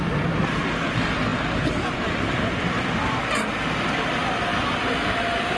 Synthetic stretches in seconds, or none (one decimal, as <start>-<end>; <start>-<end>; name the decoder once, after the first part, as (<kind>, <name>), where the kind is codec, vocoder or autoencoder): none